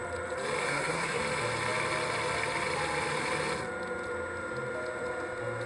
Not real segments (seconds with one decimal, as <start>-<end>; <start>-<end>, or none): 0.6-1.2